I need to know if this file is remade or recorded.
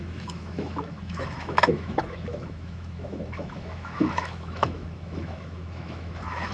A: remade